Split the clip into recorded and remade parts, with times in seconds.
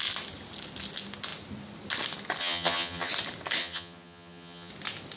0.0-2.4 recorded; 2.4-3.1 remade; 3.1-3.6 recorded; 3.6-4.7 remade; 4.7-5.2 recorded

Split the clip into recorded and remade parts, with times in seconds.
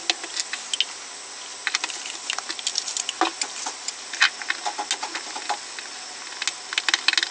0.0-7.3 recorded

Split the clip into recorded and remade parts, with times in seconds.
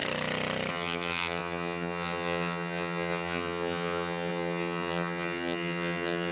0.0-0.7 recorded; 0.7-6.3 remade